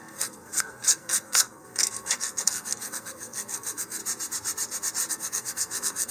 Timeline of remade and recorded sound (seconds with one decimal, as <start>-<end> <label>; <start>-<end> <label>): 0.0-4.0 remade; 4.0-5.1 recorded; 5.1-6.1 remade